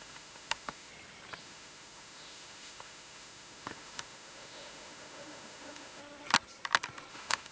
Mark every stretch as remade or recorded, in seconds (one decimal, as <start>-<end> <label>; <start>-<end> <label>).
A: 0.0-0.9 remade; 0.9-1.4 recorded; 1.4-6.0 remade; 6.0-7.1 recorded; 7.1-7.5 remade